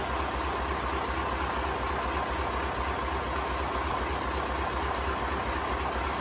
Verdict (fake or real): real